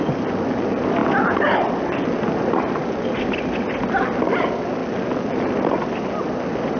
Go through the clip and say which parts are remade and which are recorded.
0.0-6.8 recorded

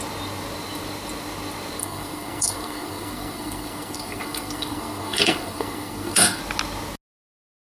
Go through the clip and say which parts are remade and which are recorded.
0.0-1.8 recorded; 1.8-6.4 remade; 6.4-7.7 recorded